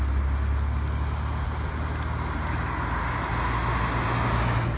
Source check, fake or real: real